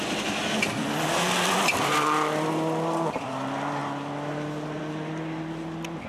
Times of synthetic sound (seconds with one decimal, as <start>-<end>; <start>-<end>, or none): none